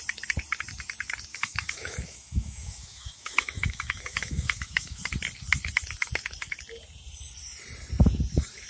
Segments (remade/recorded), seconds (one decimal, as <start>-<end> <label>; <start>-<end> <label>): 0.0-1.3 recorded; 1.3-5.1 remade; 5.1-8.7 recorded